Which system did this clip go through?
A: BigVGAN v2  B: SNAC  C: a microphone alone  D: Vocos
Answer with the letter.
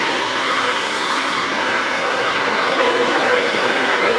B